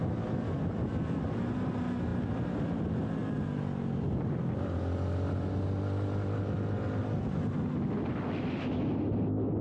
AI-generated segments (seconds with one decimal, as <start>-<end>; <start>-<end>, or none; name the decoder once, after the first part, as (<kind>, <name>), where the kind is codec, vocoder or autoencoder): none